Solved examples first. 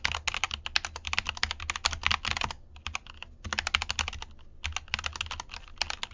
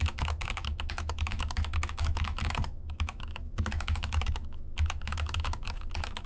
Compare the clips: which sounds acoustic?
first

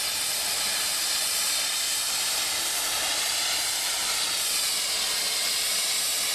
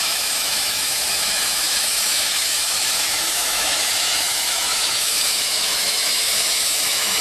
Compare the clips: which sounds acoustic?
first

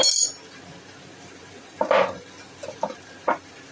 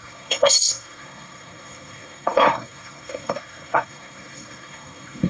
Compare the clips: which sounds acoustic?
first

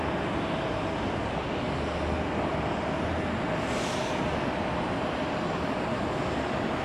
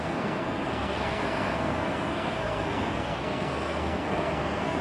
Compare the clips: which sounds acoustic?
first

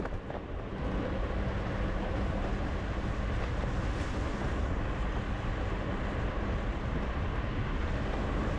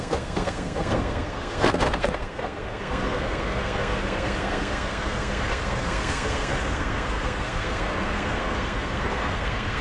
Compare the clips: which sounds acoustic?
first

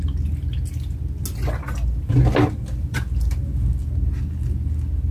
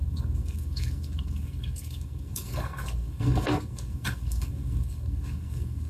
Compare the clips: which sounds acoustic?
first